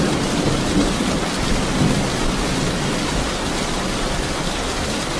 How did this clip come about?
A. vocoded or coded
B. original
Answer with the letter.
B